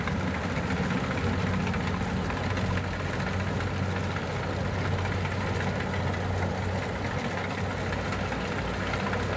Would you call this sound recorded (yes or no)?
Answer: yes